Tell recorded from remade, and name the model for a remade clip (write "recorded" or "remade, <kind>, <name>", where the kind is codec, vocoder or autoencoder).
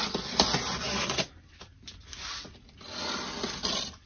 recorded